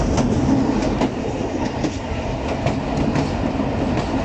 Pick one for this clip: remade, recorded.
recorded